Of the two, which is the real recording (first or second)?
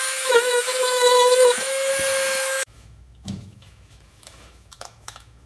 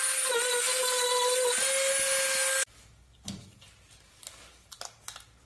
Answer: second